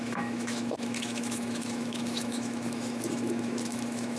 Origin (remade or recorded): remade